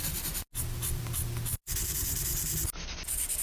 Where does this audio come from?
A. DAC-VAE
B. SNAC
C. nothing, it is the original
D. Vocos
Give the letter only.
C